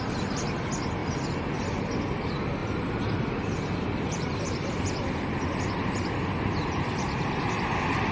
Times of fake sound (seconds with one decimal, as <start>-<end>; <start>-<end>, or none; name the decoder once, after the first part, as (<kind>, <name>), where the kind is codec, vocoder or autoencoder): 1.0-2.0 (vocoder, BigVGAN v2); 2.6-7.5